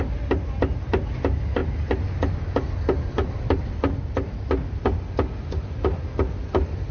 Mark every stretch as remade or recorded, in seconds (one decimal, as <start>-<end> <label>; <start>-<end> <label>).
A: 0.0-6.9 recorded